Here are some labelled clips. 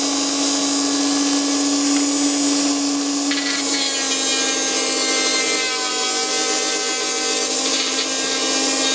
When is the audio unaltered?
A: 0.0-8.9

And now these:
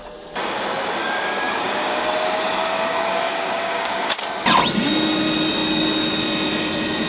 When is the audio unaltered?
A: 0.0-1.0; 2.0-2.6; 4.2-7.1

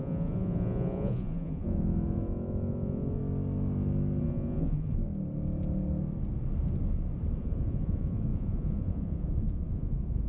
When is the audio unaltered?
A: 3.2-4.2; 5.0-7.4

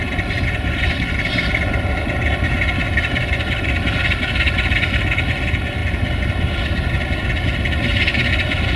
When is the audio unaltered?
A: 0.0-8.8

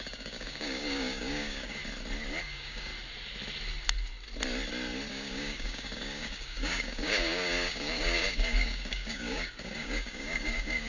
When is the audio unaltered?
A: 1.8-2.4; 2.9-5.1